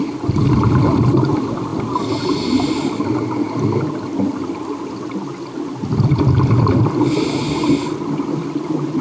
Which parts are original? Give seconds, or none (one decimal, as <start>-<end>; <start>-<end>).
0.0-9.0